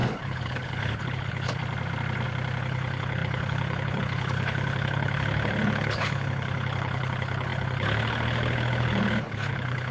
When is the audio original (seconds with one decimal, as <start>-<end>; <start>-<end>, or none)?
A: 1.6-2.6